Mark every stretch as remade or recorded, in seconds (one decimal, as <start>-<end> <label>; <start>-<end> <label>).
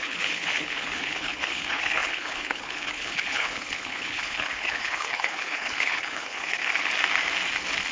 0.0-6.6 remade; 6.6-7.9 recorded